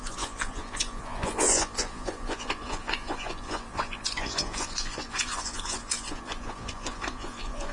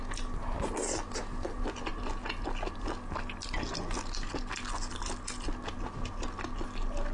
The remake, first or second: first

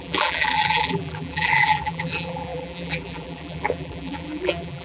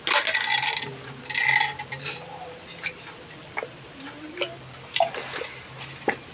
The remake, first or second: first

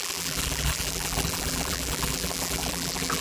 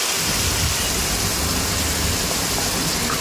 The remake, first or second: first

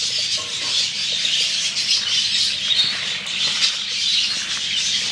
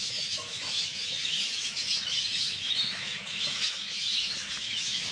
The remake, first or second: second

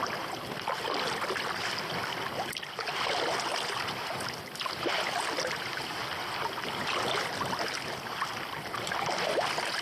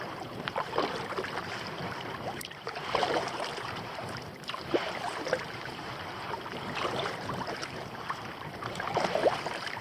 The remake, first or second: second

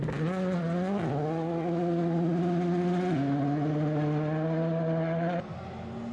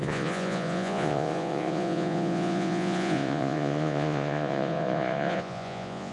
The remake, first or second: second